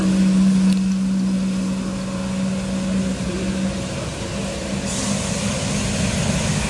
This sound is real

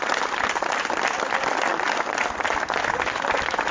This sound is real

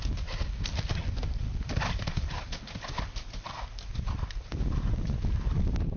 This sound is real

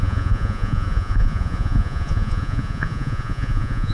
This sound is fake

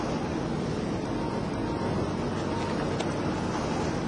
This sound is real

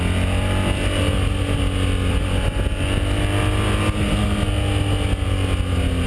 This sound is real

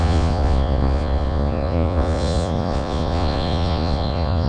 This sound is fake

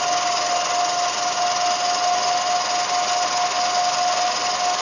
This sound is real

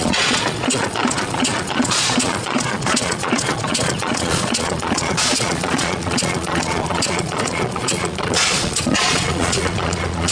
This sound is fake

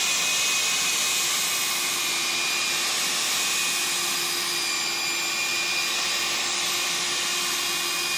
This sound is real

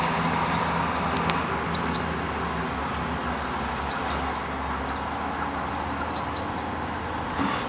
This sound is real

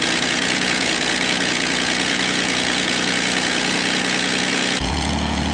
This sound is fake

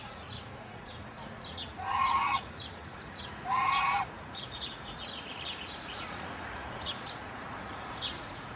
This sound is fake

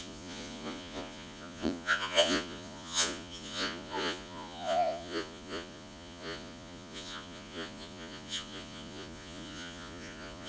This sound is fake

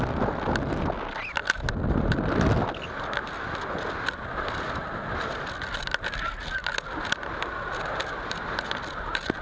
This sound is real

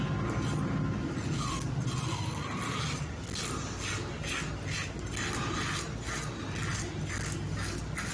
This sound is real